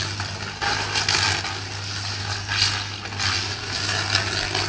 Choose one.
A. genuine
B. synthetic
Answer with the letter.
A